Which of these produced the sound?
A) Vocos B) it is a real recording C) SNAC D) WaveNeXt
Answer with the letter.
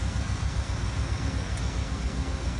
C